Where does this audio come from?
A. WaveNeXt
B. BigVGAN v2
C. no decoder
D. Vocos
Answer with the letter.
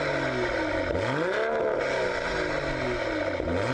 C